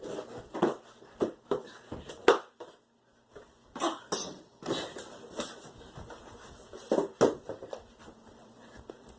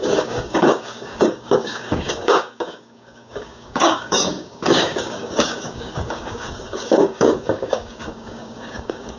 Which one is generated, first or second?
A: second